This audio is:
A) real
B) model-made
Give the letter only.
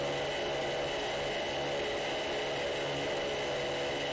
A